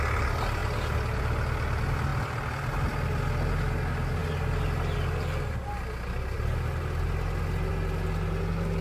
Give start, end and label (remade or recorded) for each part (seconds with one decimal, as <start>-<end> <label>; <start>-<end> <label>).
0.0-8.8 recorded